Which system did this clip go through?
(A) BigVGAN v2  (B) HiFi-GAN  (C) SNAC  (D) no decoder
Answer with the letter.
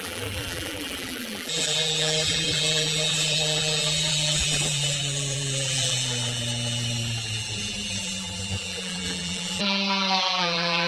A